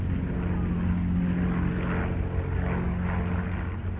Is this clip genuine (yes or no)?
yes